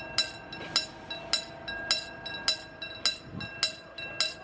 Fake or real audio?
real